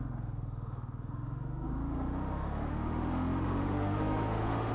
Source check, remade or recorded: remade